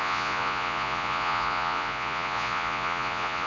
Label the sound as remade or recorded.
remade